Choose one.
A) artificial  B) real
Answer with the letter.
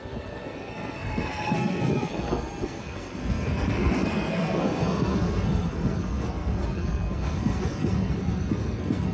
A